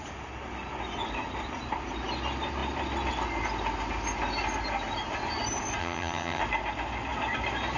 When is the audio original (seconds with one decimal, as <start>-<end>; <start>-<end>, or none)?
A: 0.0-5.8; 6.4-7.8